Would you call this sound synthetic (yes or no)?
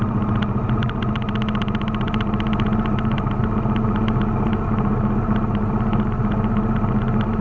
no